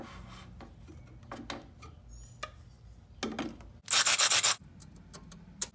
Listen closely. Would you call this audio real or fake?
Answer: real